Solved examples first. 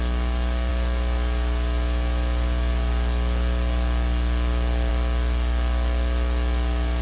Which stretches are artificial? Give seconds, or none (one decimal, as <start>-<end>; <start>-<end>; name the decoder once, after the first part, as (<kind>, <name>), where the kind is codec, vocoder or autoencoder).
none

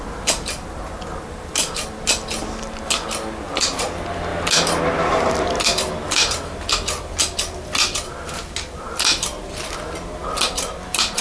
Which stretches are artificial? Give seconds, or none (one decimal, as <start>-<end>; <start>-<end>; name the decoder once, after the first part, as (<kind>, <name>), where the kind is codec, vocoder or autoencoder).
none

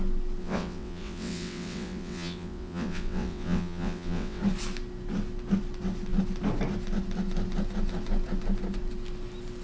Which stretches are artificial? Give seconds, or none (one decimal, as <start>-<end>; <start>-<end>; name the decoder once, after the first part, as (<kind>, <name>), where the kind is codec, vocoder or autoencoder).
0.4-4.4 (vocoder, WaveNeXt)

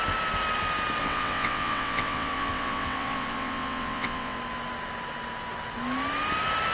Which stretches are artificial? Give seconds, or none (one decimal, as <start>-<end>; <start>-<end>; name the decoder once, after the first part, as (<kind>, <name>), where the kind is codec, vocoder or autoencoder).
1.0-4.4 (vocoder, WaveNeXt)

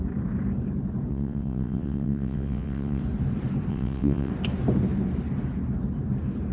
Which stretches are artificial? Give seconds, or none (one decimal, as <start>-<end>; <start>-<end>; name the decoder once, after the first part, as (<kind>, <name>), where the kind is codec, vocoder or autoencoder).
1.1-3.0 (vocoder, WaveNeXt); 3.7-4.3

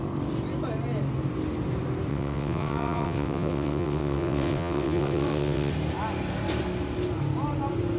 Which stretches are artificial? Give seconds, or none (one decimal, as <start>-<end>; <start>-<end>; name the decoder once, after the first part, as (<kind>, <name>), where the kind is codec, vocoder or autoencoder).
2.1-5.7 (vocoder, WaveNeXt)

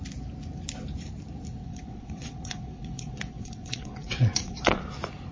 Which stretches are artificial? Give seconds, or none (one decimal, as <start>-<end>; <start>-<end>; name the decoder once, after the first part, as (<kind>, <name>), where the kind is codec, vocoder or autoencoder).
1.6-4.8 (vocoder, WaveNeXt)